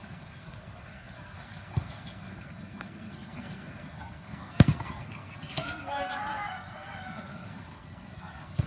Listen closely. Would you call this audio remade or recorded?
remade